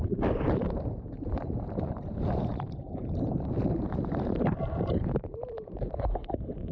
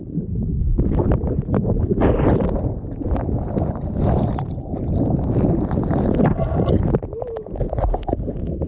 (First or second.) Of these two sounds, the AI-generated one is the first